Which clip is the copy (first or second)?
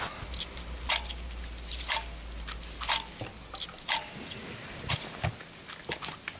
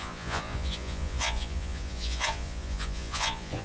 second